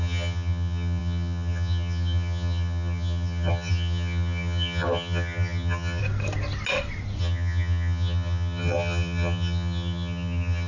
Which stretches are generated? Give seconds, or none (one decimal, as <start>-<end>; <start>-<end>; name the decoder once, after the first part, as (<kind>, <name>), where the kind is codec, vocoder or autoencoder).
0.0-6.0 (vocoder, HiFi-GAN); 7.2-10.7